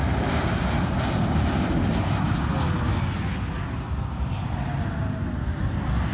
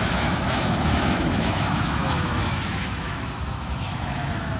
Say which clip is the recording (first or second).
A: first